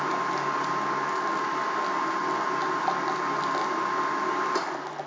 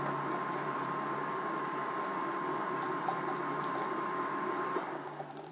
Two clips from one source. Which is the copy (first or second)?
second